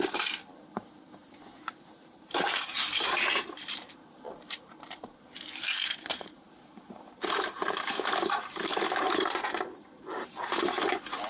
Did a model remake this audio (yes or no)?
yes